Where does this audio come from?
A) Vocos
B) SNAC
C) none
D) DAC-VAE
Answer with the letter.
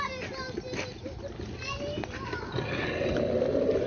C